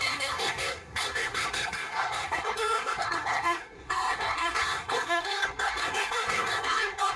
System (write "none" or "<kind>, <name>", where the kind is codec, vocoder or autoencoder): codec, SNAC